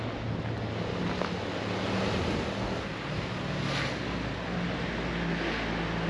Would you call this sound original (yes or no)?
yes